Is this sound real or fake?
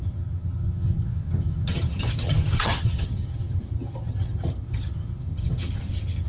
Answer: fake